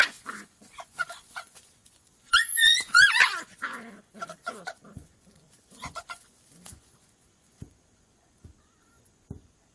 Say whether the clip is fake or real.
fake